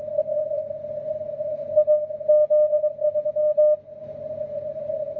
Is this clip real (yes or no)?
yes